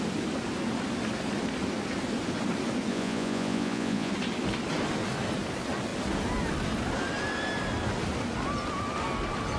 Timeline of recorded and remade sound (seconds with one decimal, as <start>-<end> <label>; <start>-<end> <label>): 0.0-2.9 recorded; 2.9-4.1 remade; 4.1-9.6 recorded